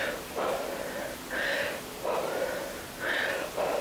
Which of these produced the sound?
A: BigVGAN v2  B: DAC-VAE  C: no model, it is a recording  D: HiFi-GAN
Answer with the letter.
C